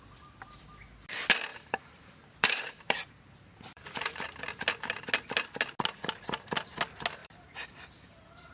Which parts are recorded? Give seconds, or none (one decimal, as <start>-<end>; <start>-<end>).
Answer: 0.0-1.5; 4.4-7.2; 7.7-8.5